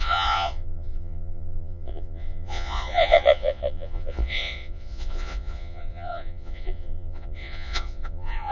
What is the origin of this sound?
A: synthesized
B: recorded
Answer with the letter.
A